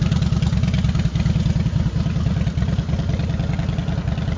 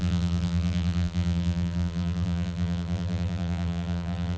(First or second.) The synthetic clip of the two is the second